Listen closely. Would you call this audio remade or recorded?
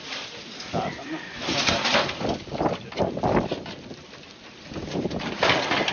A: remade